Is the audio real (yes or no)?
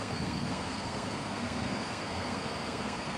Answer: no